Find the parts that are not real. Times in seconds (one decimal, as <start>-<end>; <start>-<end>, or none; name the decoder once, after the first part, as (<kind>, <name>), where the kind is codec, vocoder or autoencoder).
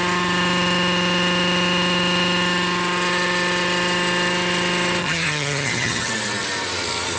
5.0-6.1 (vocoder, HiFi-GAN)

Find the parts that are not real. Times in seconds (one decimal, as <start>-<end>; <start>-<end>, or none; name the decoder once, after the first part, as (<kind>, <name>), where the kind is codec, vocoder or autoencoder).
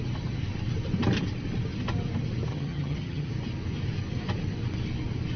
2.5-3.3 (vocoder, HiFi-GAN)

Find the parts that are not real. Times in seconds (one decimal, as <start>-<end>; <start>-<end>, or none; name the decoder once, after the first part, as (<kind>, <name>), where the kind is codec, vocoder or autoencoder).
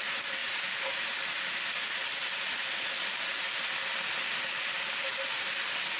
none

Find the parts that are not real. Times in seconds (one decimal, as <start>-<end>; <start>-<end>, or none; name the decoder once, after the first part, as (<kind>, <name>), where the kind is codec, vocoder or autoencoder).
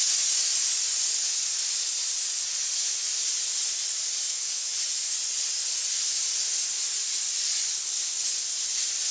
none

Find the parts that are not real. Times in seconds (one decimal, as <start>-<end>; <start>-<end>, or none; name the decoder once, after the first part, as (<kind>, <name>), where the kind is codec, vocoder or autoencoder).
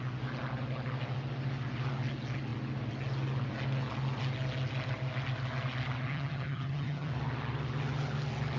6.1-7.1 (vocoder, HiFi-GAN)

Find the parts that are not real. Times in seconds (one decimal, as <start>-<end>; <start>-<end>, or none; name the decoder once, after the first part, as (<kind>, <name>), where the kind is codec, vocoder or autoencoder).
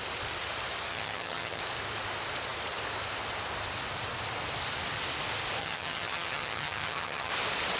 0.9-1.6 (vocoder, HiFi-GAN); 5.6-7.3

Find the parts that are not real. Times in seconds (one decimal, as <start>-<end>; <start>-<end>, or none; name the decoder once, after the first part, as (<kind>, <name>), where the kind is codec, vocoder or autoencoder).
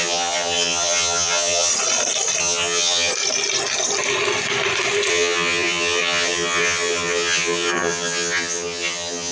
0.0-1.7 (vocoder, HiFi-GAN); 2.4-3.1; 5.1-9.3